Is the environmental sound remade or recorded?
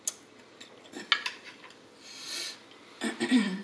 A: recorded